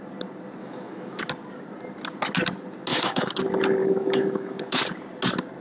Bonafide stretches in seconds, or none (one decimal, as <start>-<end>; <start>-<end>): 0.0-0.6; 1.2-2.9; 3.4-3.8; 4.8-5.6